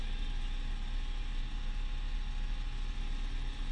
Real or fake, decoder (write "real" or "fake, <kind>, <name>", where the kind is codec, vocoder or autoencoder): real